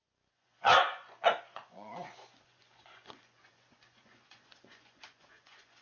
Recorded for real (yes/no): no